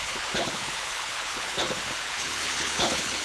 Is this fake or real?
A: fake